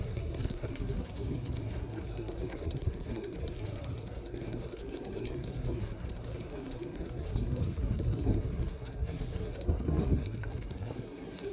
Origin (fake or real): fake